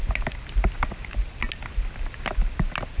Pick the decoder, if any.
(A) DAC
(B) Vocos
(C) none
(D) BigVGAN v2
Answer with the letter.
C